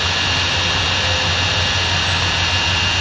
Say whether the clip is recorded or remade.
recorded